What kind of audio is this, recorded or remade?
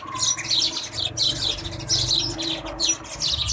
recorded